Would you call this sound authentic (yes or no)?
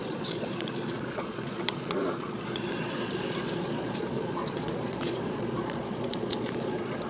no